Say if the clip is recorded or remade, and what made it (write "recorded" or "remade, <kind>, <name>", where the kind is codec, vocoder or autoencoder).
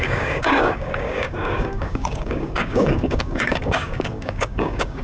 remade, codec, DAC